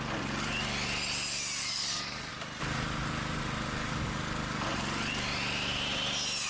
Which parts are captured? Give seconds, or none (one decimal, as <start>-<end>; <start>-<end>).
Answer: 0.0-1.6; 2.3-3.8; 4.6-6.5